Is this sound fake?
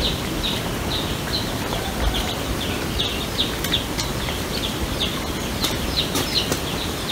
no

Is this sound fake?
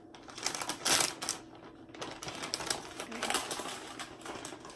no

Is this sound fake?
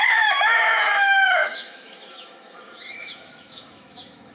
yes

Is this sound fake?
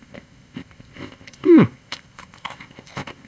yes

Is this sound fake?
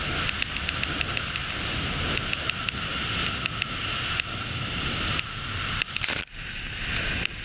no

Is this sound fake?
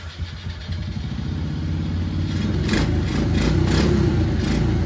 no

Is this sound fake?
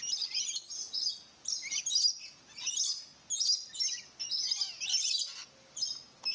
no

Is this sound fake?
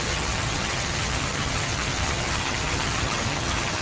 yes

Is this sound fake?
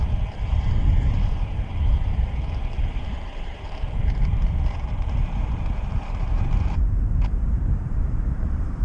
yes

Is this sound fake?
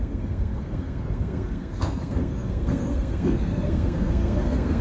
yes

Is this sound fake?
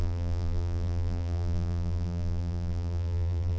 yes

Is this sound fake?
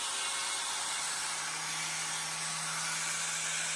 no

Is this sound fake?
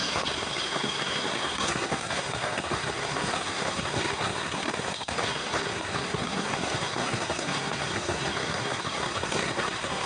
yes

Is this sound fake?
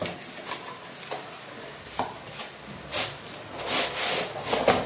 no